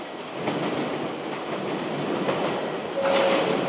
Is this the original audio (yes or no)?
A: yes